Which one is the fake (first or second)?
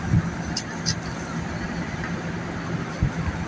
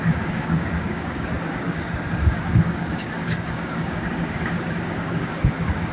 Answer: second